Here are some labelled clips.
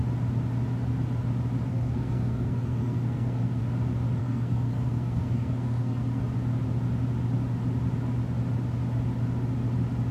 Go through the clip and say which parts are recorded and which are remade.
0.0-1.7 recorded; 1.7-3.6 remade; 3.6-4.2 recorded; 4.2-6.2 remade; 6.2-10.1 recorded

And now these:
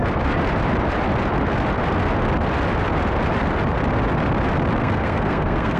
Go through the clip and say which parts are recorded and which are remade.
0.0-4.8 recorded; 4.8-5.8 remade

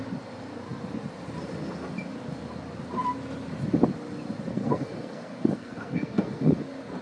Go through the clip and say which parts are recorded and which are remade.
0.0-4.5 recorded; 4.5-6.6 remade; 6.6-7.0 recorded

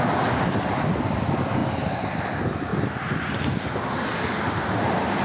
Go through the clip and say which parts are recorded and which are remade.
0.0-1.6 remade; 1.6-2.2 recorded; 2.2-2.7 remade; 2.7-4.1 recorded; 4.1-5.2 remade

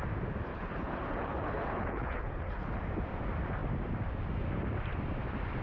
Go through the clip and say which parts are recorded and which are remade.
0.0-0.5 recorded; 0.5-2.8 remade; 2.8-5.6 recorded